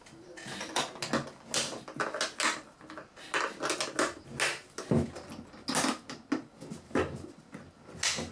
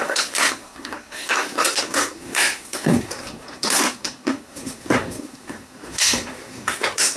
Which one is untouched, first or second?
first